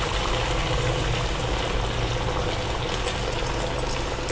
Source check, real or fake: real